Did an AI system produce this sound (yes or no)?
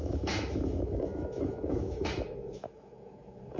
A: yes